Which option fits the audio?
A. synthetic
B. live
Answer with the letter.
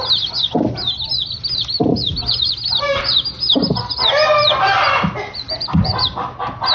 B